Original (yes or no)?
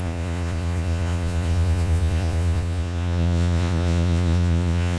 no